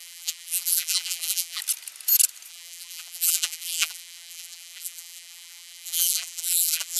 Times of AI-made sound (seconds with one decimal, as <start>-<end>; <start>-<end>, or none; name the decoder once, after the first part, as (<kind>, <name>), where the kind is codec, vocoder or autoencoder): 0.0-1.6 (vocoder, BigVGAN v2); 2.5-7.0